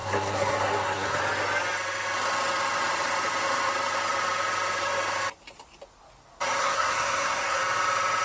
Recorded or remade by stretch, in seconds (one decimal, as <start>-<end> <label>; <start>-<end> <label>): 0.0-1.2 remade; 1.2-6.6 recorded; 6.6-7.6 remade; 7.6-8.2 recorded